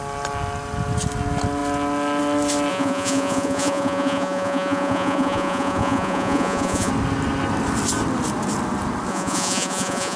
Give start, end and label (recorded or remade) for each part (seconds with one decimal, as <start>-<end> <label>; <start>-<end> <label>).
0.0-2.7 recorded; 2.7-6.9 remade; 6.9-9.1 recorded; 9.1-10.2 remade